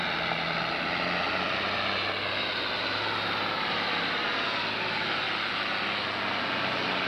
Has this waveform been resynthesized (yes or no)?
no